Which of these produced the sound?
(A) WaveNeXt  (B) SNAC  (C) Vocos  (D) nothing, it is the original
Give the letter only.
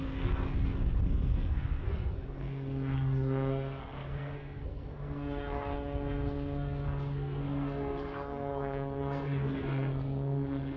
B